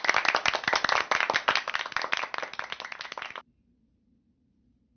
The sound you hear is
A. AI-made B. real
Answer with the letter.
B